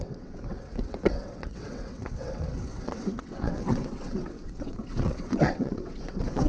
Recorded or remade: remade